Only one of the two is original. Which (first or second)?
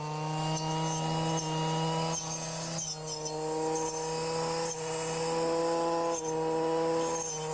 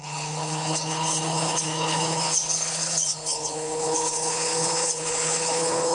first